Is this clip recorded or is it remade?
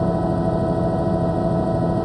recorded